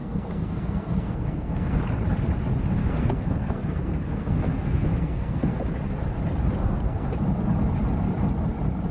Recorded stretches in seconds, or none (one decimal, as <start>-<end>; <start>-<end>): 1.8-2.8; 5.6-6.6; 7.1-8.9